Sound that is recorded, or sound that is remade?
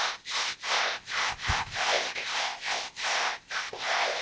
remade